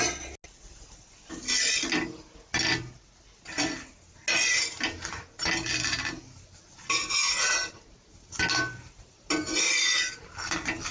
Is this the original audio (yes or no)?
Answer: yes